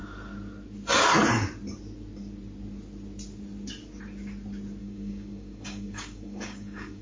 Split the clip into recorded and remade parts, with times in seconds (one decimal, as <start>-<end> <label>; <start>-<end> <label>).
0.0-4.8 recorded; 4.8-7.0 remade